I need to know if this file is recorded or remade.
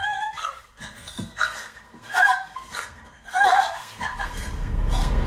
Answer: remade